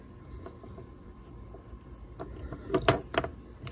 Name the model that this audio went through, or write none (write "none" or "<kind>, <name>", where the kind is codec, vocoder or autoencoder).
none